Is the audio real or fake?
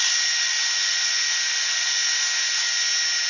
real